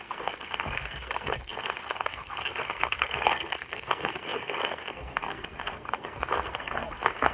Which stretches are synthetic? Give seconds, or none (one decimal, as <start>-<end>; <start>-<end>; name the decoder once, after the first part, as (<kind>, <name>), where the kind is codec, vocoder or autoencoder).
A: 0.0-7.3 (codec, SNAC)